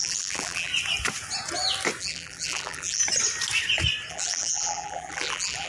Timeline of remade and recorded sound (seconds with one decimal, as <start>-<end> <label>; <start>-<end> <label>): 0.0-0.7 remade; 0.7-2.0 recorded; 2.0-3.0 remade; 3.0-4.1 recorded; 4.1-5.7 remade